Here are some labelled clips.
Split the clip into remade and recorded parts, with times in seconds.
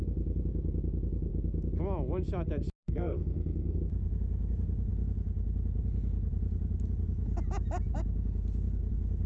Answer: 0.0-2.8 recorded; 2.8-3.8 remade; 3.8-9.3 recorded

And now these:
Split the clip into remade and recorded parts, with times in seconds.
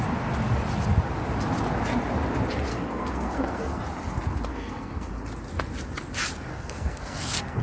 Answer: 0.0-2.7 recorded; 2.7-3.8 remade; 3.8-4.5 recorded; 4.5-5.1 remade; 5.1-6.5 recorded; 6.5-7.6 remade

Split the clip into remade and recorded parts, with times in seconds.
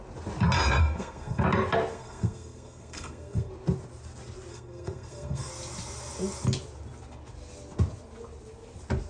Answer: 0.0-0.8 recorded; 0.8-1.4 remade; 1.4-1.9 recorded; 1.9-3.5 remade; 3.5-4.5 recorded; 4.5-5.5 remade; 5.5-9.1 recorded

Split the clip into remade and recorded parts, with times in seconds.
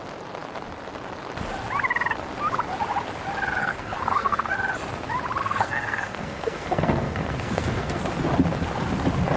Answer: 0.0-3.6 recorded; 3.6-4.5 remade; 4.5-5.4 recorded; 5.4-8.0 remade; 8.0-9.4 recorded